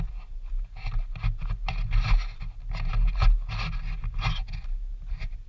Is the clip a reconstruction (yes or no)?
no